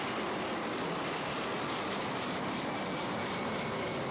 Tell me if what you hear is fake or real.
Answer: real